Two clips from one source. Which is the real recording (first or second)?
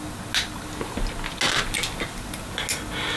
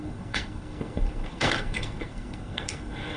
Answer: first